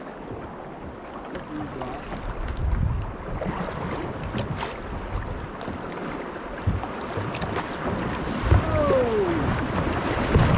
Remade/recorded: recorded